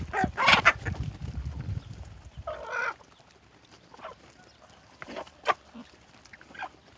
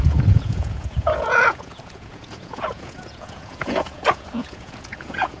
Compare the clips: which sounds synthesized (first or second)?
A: second